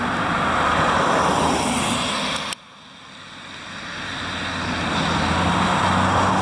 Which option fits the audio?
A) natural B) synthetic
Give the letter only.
A